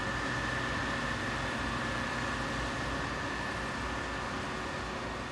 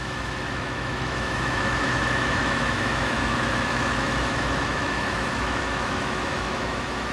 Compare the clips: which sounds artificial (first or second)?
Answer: second